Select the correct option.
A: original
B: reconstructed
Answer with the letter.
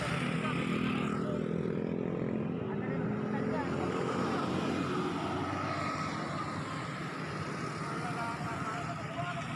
A